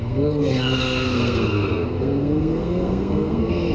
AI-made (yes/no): yes